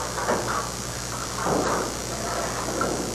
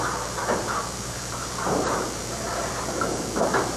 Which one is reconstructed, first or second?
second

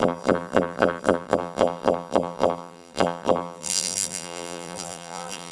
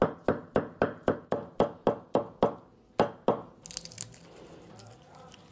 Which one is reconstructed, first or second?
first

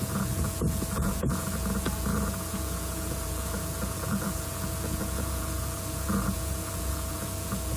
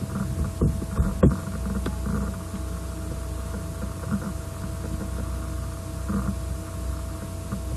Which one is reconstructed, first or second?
first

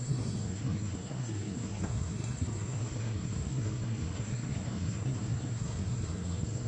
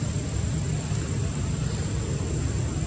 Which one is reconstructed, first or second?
first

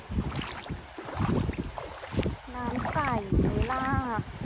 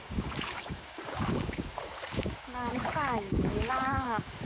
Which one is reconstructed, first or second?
second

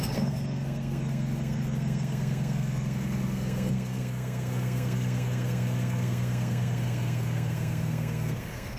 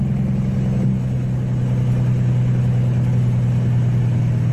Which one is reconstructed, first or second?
first